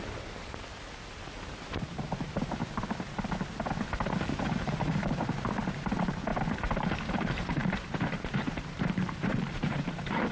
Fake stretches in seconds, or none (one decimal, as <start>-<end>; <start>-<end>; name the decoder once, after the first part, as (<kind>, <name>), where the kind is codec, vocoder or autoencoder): 0.0-2.6 (vocoder, BigVGAN v2); 4.3-6.3; 7.1-10.3